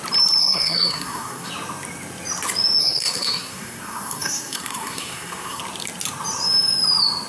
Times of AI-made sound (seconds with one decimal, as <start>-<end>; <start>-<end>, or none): 0.4-1.5; 2.8-5.6

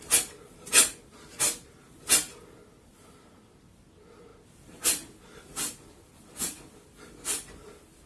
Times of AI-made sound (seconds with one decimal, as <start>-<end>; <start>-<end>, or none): none